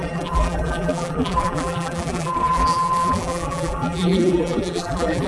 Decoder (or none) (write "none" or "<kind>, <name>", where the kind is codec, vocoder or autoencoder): vocoder, BigVGAN v2